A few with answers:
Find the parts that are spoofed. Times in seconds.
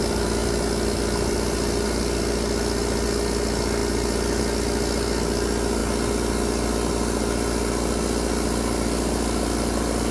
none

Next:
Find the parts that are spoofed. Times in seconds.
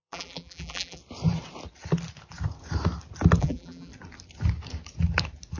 0.0-1.0 (vocoder, BigVGAN v2); 3.4-3.9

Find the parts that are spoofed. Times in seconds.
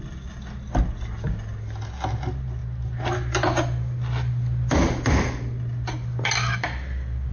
none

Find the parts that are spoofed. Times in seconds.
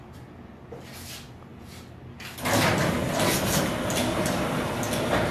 none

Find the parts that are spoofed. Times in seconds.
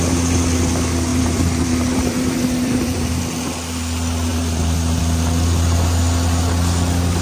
1.1-3.2 (vocoder, BigVGAN v2); 4.3-5.0